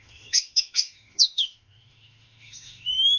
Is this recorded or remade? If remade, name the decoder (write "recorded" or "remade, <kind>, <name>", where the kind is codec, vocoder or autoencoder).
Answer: remade, autoencoder, DAC-VAE